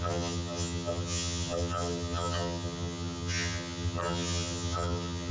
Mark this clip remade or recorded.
remade